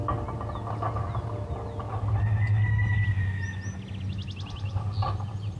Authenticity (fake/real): real